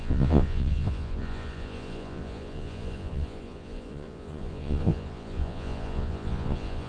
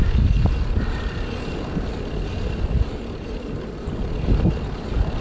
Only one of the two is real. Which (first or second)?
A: second